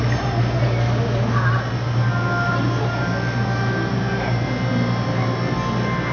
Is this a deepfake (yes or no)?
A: no